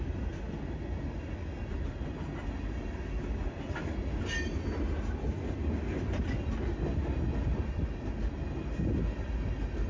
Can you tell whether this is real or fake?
real